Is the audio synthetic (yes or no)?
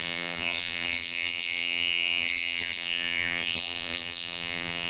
yes